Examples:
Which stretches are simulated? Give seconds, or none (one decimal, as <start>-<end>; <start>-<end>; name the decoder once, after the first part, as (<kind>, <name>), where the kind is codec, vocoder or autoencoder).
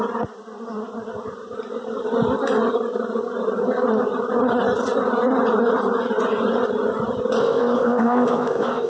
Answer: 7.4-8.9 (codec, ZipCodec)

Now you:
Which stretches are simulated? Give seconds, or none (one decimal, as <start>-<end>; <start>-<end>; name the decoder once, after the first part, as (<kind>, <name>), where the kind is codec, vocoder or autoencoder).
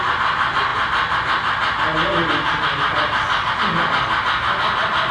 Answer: none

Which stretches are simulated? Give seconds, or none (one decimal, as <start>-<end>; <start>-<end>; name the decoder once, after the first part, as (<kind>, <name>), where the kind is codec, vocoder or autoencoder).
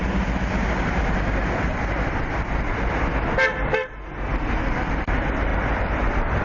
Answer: 1.7-3.0 (vocoder, BigVGAN v2)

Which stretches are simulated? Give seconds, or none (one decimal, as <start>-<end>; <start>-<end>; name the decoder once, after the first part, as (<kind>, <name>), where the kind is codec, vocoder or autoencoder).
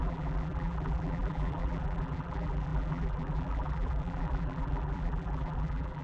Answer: 0.0-6.0 (vocoder, BigVGAN v2)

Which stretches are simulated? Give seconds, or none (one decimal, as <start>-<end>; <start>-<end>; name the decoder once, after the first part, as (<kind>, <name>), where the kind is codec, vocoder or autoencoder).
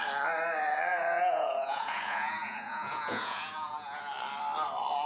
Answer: 0.9-4.0 (vocoder, Vocos)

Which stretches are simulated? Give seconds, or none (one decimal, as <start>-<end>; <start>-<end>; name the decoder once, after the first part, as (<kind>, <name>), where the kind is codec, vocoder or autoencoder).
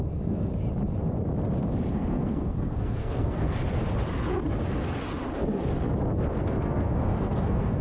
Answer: 0.0-0.5 (codec, SNAC); 1.9-3.6; 6.4-7.8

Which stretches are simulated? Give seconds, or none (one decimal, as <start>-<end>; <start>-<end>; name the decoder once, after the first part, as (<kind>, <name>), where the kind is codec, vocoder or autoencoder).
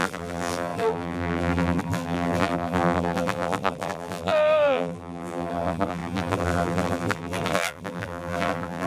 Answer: 0.0-8.9 (vocoder, BigVGAN v2)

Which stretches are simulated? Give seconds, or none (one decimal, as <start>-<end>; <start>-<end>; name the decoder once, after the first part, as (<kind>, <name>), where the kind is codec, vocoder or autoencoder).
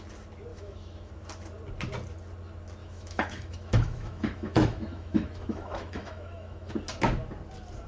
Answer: 0.5-1.1 (autoencoder, DAC-VAE); 2.8-6.7